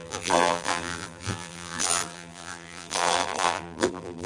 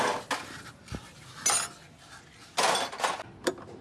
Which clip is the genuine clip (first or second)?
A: second